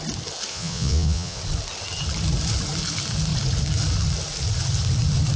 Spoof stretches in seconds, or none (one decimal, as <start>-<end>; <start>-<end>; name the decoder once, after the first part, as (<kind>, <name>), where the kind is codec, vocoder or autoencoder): 0.5-1.4 (vocoder, Vocos)